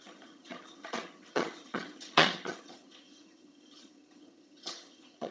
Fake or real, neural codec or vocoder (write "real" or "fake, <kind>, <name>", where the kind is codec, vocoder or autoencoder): fake, vocoder, HiFi-GAN